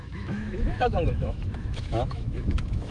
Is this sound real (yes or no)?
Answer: no